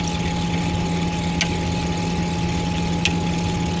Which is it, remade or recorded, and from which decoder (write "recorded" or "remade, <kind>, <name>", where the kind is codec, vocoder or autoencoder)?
recorded